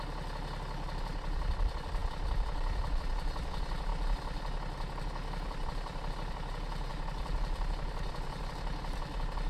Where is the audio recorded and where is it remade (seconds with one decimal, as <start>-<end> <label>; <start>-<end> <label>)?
0.0-9.5 recorded

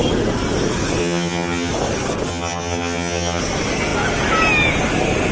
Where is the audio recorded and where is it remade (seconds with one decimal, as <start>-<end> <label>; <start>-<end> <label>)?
0.0-1.0 recorded; 1.0-1.7 remade; 1.7-2.3 recorded; 2.3-3.4 remade; 3.4-5.3 recorded

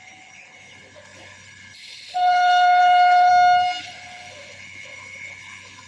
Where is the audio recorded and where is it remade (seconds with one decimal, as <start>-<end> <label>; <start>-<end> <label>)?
0.0-3.3 remade; 3.3-3.8 recorded; 3.8-5.9 remade

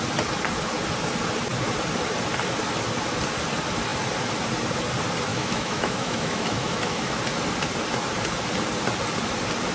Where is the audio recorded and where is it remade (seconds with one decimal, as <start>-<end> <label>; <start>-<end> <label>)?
0.0-5.3 recorded; 5.3-7.2 remade; 7.2-9.7 recorded

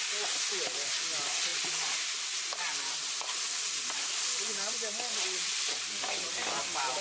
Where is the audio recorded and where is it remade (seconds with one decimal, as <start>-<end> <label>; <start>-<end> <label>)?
0.0-7.0 recorded

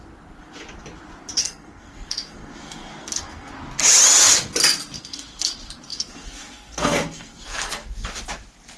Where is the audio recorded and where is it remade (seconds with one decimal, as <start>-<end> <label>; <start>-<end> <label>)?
0.0-1.4 recorded; 1.4-3.5 remade; 3.5-5.0 recorded; 5.0-5.5 remade; 5.5-5.9 recorded; 5.9-8.2 remade; 8.2-8.8 recorded

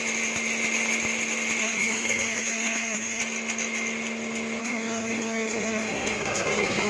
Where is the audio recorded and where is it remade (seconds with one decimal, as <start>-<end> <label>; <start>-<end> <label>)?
0.0-1.6 recorded; 1.6-3.2 remade; 3.2-4.6 recorded; 4.6-6.9 remade

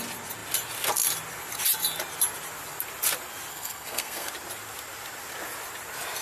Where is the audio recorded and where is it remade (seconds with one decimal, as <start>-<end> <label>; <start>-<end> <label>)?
0.0-3.5 recorded; 3.5-4.3 remade; 4.3-6.2 recorded